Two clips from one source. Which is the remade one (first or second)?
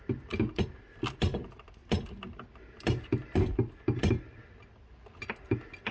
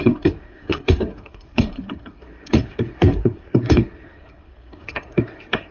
second